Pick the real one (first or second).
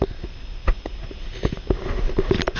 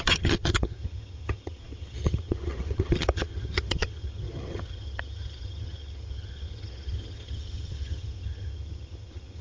first